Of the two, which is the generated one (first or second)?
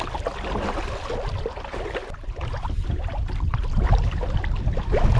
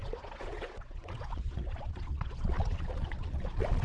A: second